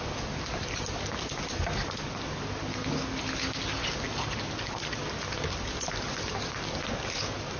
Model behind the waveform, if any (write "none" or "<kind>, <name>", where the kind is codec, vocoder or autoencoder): none